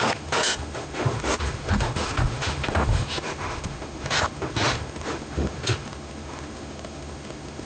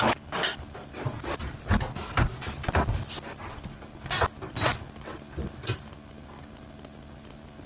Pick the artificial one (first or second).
first